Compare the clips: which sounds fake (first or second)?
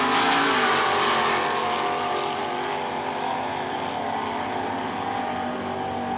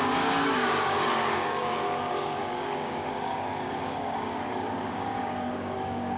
second